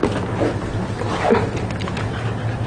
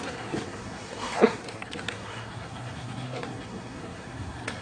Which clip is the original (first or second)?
first